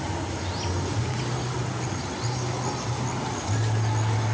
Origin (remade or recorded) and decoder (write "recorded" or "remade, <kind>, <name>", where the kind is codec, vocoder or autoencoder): recorded